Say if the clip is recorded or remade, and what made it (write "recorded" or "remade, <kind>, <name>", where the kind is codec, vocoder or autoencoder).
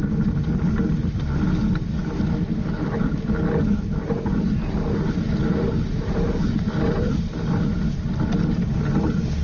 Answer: recorded